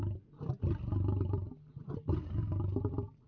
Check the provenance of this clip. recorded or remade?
recorded